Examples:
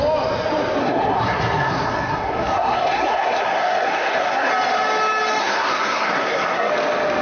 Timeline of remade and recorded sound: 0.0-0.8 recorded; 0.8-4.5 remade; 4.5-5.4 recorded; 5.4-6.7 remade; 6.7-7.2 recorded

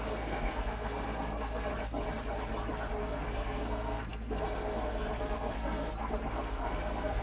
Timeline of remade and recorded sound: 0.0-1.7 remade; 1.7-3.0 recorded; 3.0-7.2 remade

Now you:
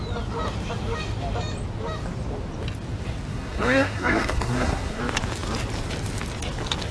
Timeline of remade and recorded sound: 0.0-3.3 recorded; 3.3-5.0 remade; 5.0-6.9 recorded